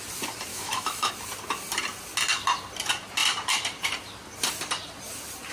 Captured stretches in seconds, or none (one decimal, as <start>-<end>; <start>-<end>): 0.0-0.5; 1.1-5.5